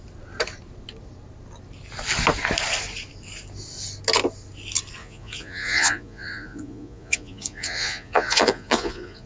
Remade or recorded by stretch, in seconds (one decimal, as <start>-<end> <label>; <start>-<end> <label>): 0.0-5.0 recorded; 5.0-9.3 remade